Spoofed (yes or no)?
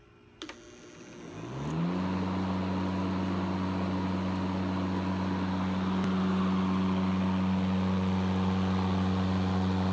no